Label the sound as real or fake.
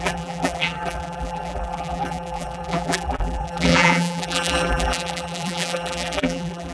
fake